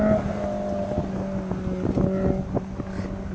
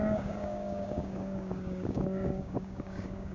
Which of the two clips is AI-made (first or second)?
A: second